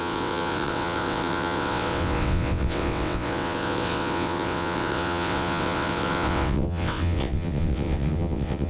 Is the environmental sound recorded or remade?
remade